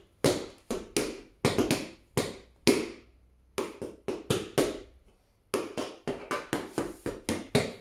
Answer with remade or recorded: recorded